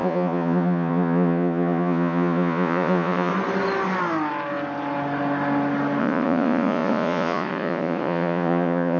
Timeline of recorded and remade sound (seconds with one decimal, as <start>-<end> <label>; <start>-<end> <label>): 0.0-3.3 remade; 3.3-6.0 recorded; 6.0-9.0 remade